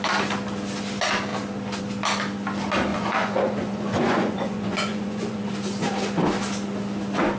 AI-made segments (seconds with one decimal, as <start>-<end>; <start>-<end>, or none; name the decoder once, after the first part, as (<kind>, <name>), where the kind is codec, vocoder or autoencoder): 2.9-5.5 (vocoder, Vocos)